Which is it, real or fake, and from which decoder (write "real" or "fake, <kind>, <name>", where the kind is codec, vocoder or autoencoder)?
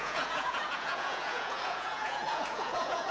fake, vocoder, Vocos